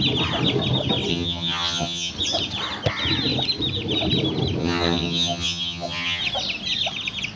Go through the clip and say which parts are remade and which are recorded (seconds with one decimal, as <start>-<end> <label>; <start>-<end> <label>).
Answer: 0.0-1.1 recorded; 1.1-2.1 remade; 2.1-4.6 recorded; 4.6-6.2 remade; 6.2-7.4 recorded